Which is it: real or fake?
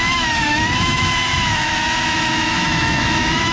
fake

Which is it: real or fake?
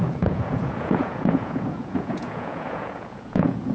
fake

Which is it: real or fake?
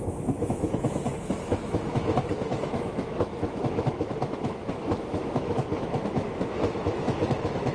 fake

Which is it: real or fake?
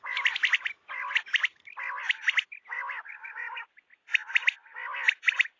real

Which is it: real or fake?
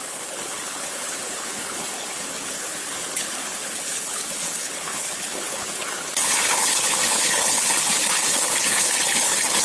fake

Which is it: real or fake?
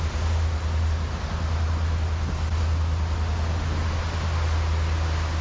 real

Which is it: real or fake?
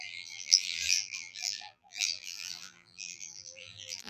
fake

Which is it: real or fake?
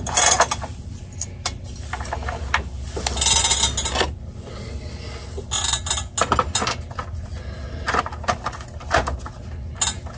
real